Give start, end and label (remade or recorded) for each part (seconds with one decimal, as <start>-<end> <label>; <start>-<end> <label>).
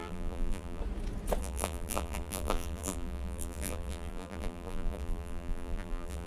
0.0-0.8 remade; 0.8-1.4 recorded; 1.4-6.3 remade